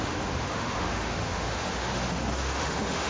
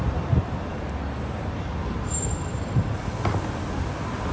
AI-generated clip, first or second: first